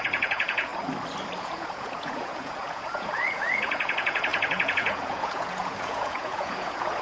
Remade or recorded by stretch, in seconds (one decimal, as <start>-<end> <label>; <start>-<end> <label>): 0.0-0.7 remade; 0.7-1.4 recorded; 1.4-7.0 remade